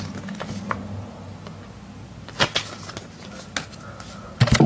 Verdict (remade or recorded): recorded